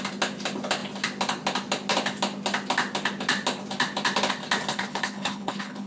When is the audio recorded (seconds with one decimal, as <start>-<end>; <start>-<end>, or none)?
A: 0.0-4.7